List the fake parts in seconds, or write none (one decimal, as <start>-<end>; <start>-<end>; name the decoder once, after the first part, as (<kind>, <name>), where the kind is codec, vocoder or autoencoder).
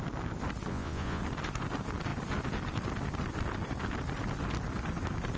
0.7-1.2 (vocoder, Vocos)